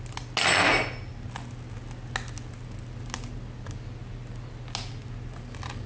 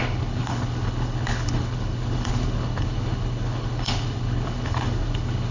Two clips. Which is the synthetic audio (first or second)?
second